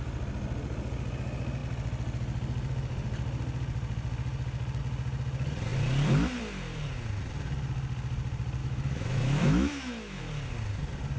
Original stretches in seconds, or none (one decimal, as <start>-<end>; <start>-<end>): 0.0-8.6; 10.2-11.2